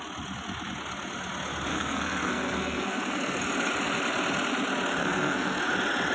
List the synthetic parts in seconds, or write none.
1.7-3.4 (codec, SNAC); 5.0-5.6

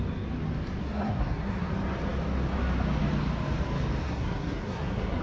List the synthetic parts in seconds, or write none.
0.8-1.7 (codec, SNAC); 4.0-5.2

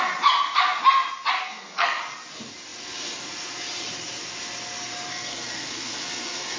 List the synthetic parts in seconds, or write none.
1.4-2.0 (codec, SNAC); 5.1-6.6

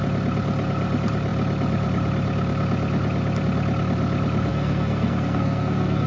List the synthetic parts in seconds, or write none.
4.5-6.1 (codec, SNAC)